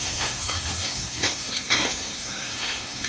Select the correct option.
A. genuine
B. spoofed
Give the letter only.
B